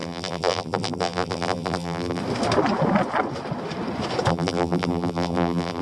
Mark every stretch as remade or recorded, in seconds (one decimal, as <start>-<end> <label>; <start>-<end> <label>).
0.0-2.2 remade; 2.2-4.3 recorded; 4.3-5.8 remade